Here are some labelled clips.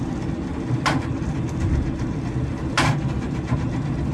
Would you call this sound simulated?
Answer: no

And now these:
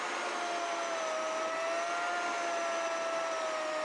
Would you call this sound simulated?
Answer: no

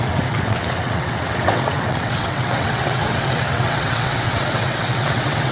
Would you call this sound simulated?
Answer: yes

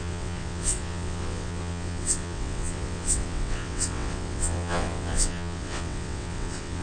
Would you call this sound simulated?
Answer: yes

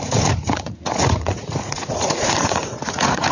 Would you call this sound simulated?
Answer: yes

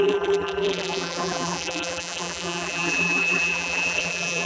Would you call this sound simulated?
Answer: yes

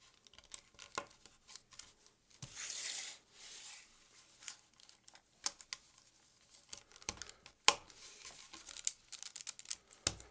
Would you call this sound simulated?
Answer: no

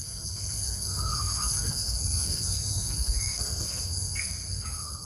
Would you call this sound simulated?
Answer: yes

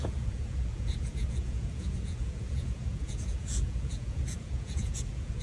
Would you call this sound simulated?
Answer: yes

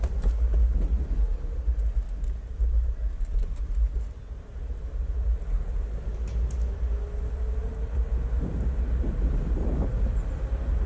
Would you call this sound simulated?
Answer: no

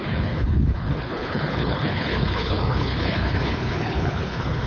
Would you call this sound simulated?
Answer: yes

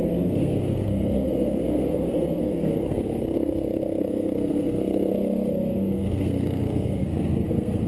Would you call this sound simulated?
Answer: yes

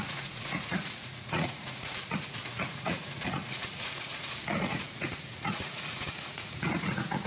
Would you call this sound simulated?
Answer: yes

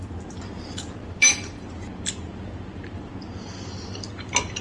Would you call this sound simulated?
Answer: no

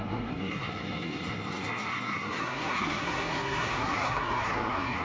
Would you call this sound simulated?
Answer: yes